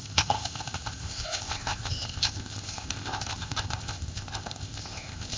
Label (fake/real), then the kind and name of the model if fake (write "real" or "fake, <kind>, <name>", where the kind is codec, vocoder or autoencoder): fake, codec, ZipCodec